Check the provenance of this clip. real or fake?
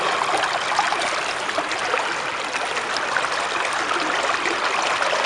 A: real